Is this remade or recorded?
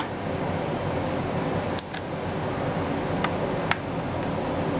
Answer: recorded